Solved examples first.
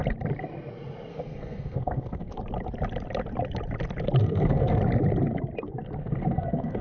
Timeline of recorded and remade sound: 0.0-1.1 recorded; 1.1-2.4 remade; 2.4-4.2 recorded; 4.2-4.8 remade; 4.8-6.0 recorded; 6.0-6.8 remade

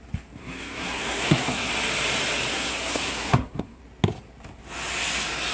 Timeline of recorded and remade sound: 0.0-0.4 recorded; 0.4-1.7 remade; 1.7-2.5 recorded; 2.5-3.8 remade; 3.8-5.5 recorded

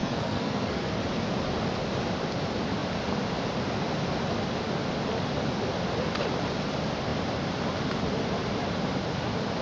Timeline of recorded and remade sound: 0.0-1.0 remade; 1.0-9.6 recorded

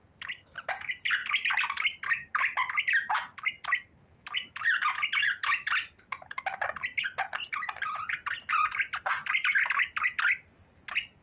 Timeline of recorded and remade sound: 0.0-11.2 recorded

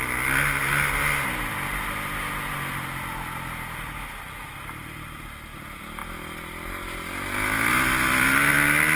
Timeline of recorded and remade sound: 0.0-9.0 recorded

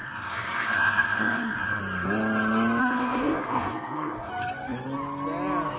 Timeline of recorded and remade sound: 0.0-1.8 remade; 1.8-2.8 recorded; 2.8-4.3 remade; 4.3-5.8 recorded

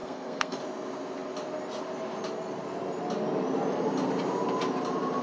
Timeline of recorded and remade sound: 0.0-0.6 remade; 0.6-5.2 recorded